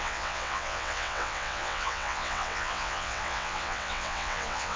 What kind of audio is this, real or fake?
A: fake